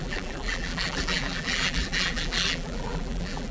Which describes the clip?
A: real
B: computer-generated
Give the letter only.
B